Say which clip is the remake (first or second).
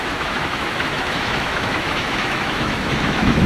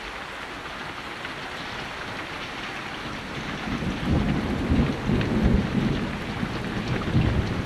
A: first